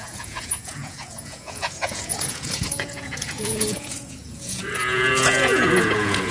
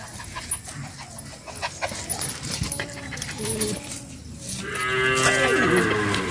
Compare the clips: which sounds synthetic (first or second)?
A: first